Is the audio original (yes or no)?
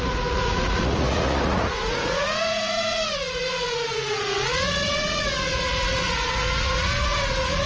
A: no